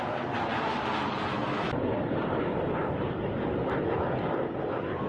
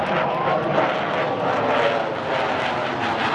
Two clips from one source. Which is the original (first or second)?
second